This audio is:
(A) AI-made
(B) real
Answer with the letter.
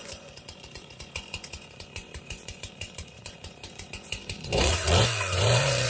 A